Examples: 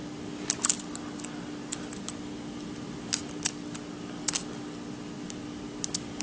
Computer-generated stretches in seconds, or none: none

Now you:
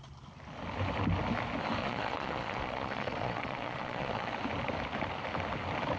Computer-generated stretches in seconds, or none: 1.8-4.3 (vocoder, Vocos)

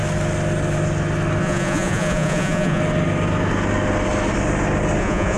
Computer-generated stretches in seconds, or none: 1.4-2.8 (vocoder, Vocos); 5.0-5.4

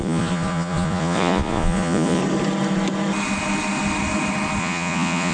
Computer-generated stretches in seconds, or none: 0.0-2.2 (vocoder, Vocos); 4.6-5.3

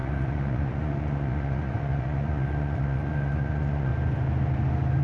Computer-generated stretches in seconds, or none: 0.0-3.9 (vocoder, Vocos)